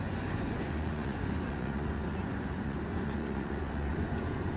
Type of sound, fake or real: fake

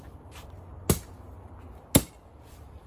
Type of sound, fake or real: real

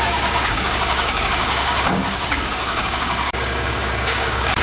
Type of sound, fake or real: fake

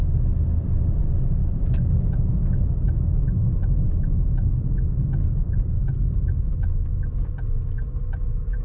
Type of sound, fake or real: real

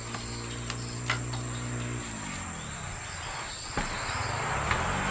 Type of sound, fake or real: real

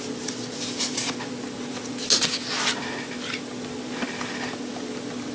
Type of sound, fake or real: real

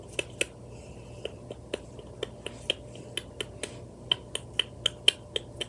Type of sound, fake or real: real